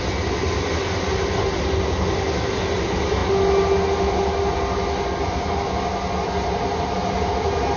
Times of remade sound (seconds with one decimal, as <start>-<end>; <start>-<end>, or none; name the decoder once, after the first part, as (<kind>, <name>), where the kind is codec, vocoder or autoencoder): none